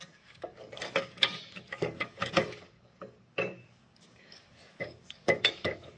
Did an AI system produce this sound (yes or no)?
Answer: yes